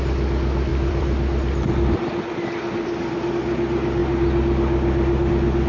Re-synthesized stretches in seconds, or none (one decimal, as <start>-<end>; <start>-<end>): 0.7-3.3